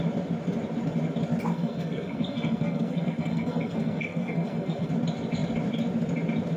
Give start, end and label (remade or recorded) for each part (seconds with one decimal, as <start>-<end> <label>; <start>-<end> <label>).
0.0-1.5 recorded; 1.5-4.9 remade; 4.9-6.6 recorded